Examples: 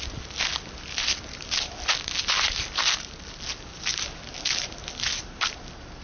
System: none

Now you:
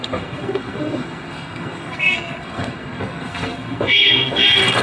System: codec, SNAC